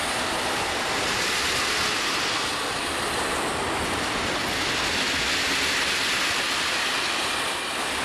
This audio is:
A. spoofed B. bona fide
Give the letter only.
B